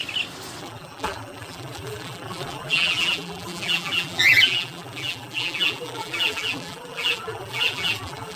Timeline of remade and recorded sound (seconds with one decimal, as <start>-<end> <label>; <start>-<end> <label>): 0.0-0.6 recorded; 0.6-8.4 remade

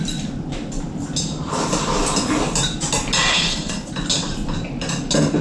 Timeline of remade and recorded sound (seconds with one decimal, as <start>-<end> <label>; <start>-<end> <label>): 0.0-3.3 recorded; 3.3-3.9 remade; 3.9-5.4 recorded

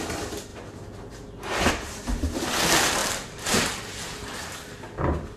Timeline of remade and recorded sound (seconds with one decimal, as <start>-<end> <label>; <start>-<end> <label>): 0.0-5.4 recorded